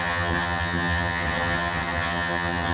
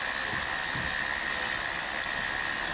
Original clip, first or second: second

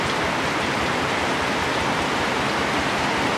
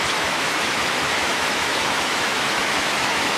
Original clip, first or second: first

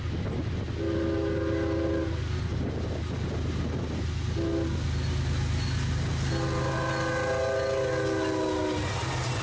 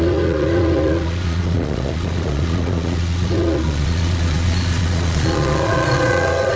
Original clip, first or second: first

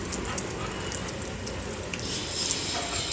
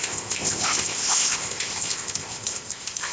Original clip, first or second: first